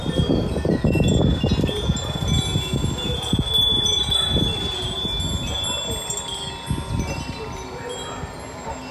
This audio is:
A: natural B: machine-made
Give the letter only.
A